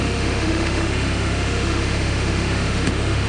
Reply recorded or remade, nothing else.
remade